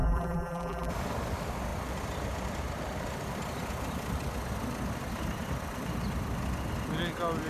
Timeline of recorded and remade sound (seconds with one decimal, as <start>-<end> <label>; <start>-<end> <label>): 0.0-0.9 remade; 0.9-7.5 recorded